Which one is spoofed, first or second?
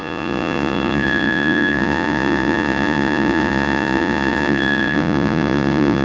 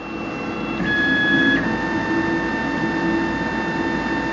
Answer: first